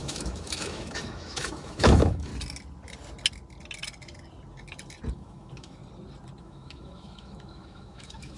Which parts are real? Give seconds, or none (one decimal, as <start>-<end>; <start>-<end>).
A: 2.3-5.1; 5.8-6.4